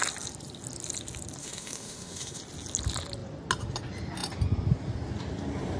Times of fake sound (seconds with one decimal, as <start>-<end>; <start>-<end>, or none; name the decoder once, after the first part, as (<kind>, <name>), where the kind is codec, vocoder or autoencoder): 1.4-2.4 (autoencoder, DAC-VAE)